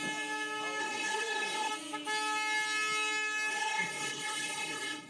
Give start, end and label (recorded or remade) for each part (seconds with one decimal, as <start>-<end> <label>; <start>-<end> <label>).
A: 0.0-0.8 recorded; 0.8-1.7 remade; 1.7-3.5 recorded; 3.5-5.1 remade